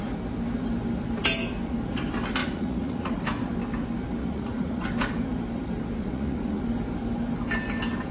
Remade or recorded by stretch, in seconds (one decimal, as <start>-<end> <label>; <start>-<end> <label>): 0.0-2.4 recorded; 2.4-3.2 remade; 3.2-4.2 recorded; 4.2-4.8 remade; 4.8-6.0 recorded; 6.0-6.6 remade; 6.6-8.1 recorded